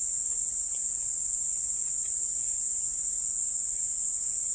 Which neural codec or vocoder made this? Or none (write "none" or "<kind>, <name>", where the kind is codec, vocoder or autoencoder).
none